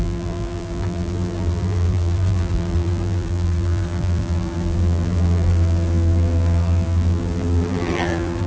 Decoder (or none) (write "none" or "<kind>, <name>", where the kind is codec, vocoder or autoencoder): vocoder, BigVGAN v2